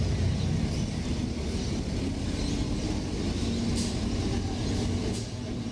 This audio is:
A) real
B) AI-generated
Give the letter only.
A